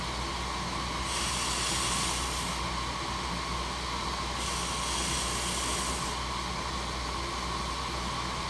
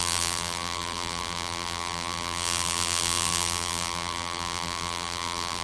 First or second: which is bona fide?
first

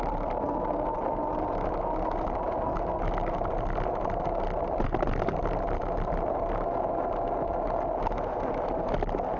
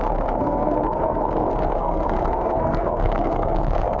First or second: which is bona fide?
first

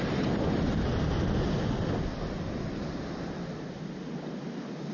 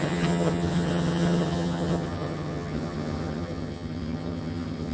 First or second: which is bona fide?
first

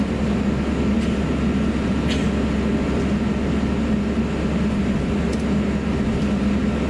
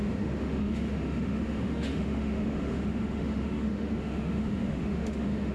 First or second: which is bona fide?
first